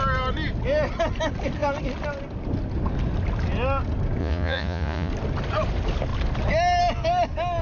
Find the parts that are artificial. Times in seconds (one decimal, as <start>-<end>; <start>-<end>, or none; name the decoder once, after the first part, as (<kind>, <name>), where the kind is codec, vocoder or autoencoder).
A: 4.2-5.1 (vocoder, Vocos)